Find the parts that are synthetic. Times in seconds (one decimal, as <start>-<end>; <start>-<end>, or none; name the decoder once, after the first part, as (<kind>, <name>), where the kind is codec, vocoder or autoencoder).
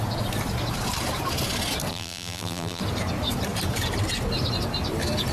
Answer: 1.9-2.8 (vocoder, BigVGAN v2)